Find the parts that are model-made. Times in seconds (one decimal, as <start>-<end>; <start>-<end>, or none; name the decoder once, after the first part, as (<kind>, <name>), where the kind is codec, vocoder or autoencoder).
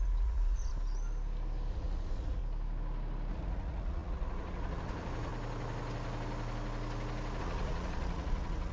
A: 0.0-0.7 (vocoder, Vocos); 1.7-2.4; 3.3-5.3; 7.4-8.7